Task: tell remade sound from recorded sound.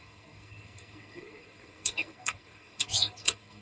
remade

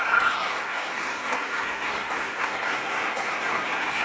remade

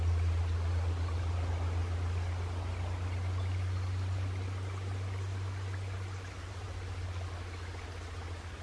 recorded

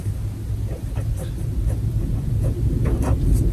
recorded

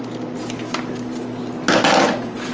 recorded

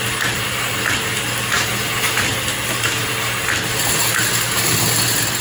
recorded